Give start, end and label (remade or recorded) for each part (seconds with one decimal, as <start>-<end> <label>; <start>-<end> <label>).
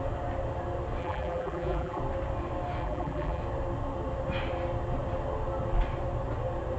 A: 0.0-1.0 recorded; 1.0-2.0 remade; 2.0-2.8 recorded; 2.8-3.4 remade; 3.4-6.8 recorded